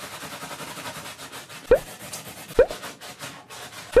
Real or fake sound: real